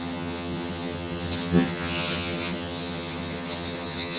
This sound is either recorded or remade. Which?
remade